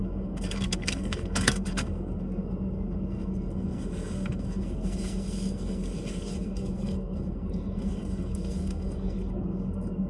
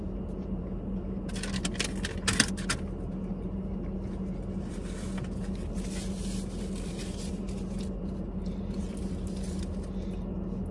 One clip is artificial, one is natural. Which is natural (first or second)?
second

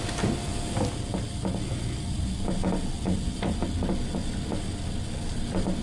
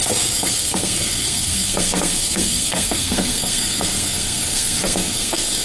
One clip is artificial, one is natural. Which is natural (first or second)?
first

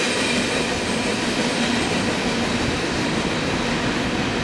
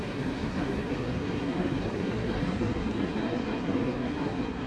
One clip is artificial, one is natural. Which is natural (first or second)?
first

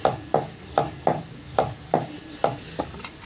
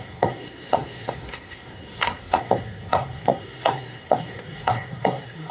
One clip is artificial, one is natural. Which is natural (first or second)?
first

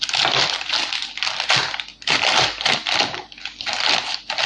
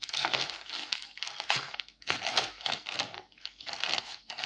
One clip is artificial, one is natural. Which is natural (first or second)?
first